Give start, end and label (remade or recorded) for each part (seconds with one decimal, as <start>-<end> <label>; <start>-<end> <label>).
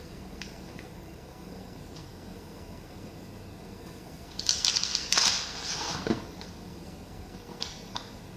0.0-8.4 remade